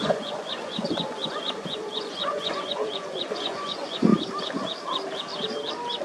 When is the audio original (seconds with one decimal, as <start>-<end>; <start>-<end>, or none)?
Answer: 4.1-6.0